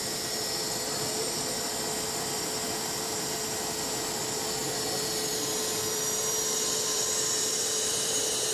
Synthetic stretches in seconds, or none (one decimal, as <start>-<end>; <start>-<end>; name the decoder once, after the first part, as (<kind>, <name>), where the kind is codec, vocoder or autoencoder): 0.0-8.5 (vocoder, BigVGAN v2)